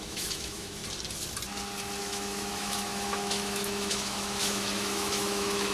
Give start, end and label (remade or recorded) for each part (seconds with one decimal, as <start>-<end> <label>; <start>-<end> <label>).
0.0-0.8 remade; 0.8-2.0 recorded; 2.0-5.7 remade